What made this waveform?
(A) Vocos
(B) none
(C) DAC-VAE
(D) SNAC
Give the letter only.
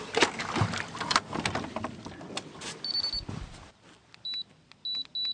B